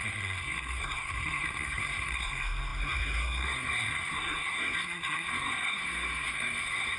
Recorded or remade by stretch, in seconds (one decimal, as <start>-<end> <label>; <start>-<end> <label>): 0.0-7.0 remade